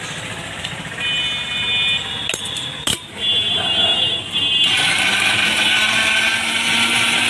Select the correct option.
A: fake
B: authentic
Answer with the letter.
B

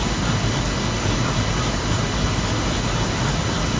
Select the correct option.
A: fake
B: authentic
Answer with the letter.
B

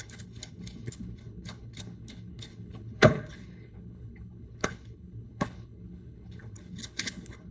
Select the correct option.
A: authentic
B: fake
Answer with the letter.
B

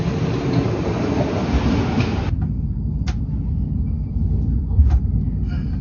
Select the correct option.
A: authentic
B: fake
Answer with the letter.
A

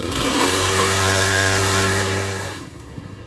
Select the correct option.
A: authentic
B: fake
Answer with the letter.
B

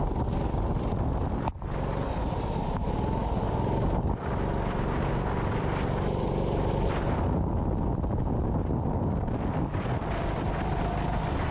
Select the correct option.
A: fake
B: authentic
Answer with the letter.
B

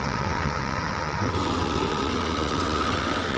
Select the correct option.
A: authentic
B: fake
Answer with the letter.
B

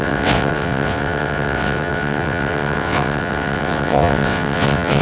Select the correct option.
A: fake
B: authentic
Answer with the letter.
A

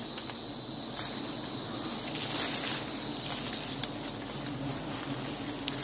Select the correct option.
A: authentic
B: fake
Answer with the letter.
A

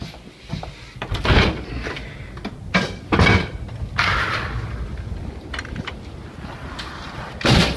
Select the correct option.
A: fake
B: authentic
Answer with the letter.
B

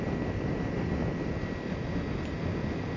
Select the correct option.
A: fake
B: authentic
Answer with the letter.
B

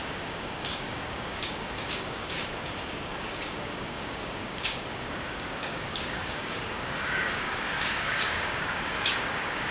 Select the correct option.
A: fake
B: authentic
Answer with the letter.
A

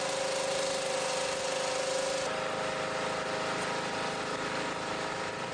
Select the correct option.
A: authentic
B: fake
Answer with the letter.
A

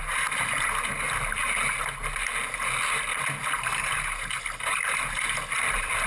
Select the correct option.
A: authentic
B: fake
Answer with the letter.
A